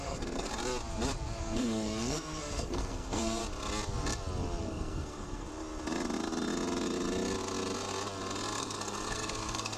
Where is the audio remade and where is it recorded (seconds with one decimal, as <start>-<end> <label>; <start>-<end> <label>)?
0.0-0.5 remade; 0.5-1.4 recorded; 1.4-3.4 remade; 3.4-4.6 recorded; 4.6-5.5 remade; 5.5-8.6 recorded; 8.6-9.8 remade